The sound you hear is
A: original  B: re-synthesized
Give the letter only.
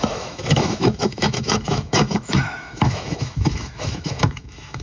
B